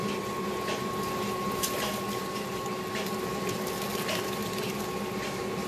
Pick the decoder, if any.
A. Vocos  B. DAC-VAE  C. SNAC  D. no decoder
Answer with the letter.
D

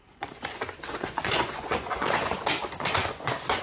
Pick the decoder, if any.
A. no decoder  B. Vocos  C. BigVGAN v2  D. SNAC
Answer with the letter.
B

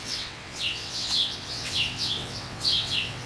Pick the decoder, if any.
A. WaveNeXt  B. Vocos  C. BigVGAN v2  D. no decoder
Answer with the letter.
A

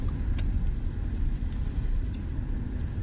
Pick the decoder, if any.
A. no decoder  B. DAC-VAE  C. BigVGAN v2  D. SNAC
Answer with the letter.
A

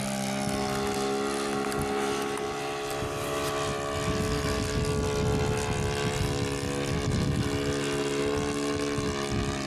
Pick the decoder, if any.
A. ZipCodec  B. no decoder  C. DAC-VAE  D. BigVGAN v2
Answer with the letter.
B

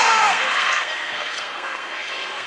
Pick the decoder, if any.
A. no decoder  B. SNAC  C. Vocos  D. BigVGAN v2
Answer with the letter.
B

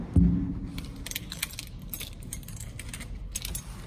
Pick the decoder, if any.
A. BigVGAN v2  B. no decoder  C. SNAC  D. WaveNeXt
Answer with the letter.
B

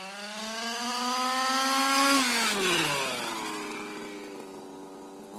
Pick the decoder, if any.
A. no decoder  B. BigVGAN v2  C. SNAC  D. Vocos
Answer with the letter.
A